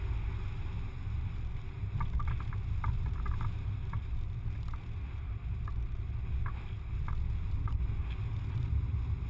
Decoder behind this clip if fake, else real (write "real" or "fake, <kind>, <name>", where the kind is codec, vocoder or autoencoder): real